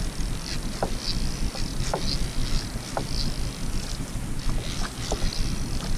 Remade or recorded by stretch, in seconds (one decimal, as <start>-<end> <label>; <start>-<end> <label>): 0.0-6.0 recorded